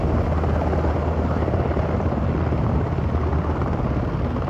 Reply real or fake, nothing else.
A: real